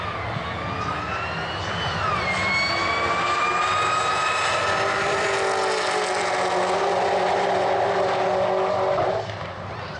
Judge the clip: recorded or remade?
recorded